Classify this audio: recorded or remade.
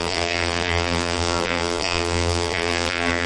remade